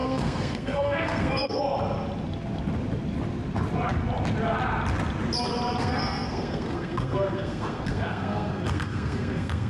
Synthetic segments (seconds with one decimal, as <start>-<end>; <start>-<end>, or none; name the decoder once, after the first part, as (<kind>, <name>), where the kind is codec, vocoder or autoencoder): 0.0-1.6 (codec, SNAC); 5.8-9.7